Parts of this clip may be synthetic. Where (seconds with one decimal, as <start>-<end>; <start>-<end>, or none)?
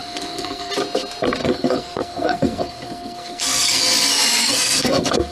0.0-0.7; 1.4-3.8; 4.4-5.3